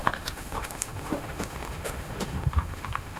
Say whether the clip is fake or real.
fake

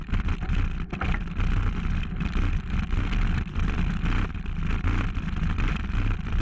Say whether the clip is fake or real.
fake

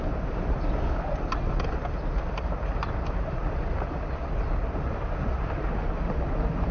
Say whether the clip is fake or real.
real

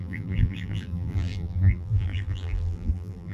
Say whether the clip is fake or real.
fake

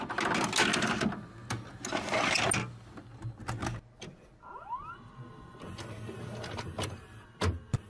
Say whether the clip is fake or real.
real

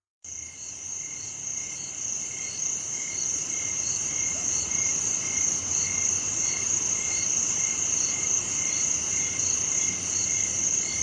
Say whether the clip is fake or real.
fake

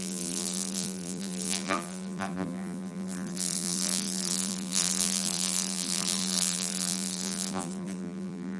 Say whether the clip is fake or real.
fake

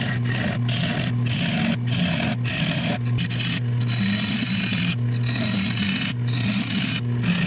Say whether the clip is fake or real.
real